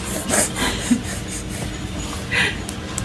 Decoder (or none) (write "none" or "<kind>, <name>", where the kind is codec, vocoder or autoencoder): none